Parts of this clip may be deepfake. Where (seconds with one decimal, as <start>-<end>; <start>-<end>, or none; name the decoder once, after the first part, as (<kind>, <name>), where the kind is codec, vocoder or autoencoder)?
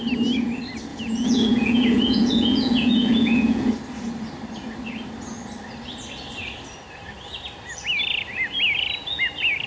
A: 0.9-3.7 (vocoder, Vocos)